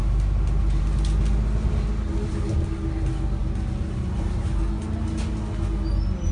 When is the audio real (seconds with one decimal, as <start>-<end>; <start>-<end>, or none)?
0.0-6.3